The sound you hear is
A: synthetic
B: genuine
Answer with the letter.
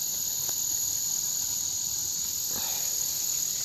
B